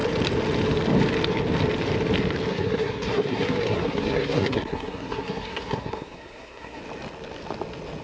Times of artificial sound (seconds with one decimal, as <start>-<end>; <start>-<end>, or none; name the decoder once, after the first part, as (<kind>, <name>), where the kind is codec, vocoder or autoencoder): 2.5-6.8 (codec, SNAC)